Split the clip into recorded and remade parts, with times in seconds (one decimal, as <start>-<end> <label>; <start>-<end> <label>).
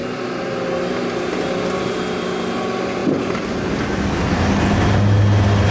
0.0-5.7 recorded